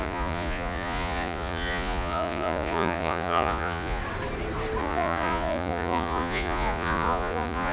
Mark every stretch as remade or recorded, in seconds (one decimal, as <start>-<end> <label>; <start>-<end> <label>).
0.0-4.0 remade; 4.0-4.8 recorded; 4.8-7.7 remade